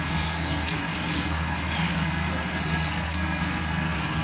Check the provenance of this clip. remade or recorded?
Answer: remade